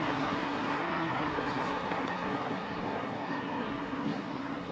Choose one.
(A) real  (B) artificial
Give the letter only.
B